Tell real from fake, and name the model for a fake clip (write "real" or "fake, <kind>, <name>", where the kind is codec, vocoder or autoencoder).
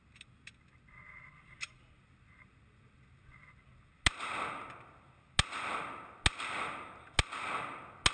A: real